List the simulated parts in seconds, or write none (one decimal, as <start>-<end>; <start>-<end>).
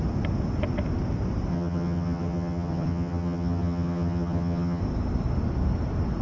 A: 1.5-4.8